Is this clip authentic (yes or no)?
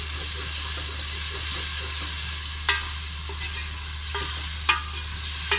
yes